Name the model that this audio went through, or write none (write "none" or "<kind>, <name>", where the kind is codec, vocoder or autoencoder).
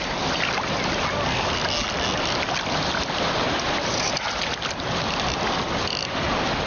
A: none